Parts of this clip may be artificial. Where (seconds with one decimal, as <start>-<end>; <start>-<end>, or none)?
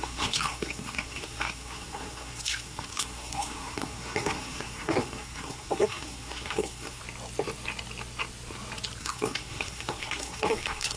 0.0-7.0; 9.0-11.0